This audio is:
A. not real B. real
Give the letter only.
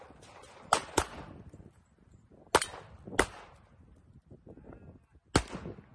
B